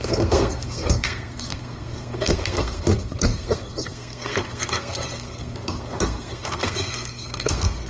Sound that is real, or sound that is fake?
fake